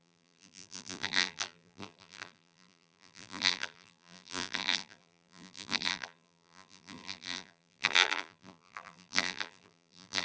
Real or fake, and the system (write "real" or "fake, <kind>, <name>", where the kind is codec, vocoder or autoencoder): fake, vocoder, BigVGAN v2